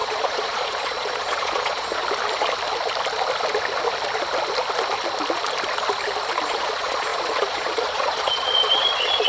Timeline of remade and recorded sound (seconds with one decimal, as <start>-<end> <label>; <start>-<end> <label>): 0.0-2.0 remade; 2.0-6.5 recorded; 6.5-9.3 remade